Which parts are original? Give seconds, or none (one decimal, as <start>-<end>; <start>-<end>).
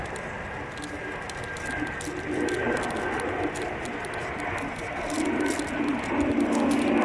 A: 0.0-4.2; 4.9-7.0